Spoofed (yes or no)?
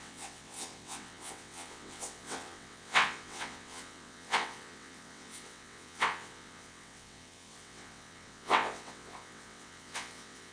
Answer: yes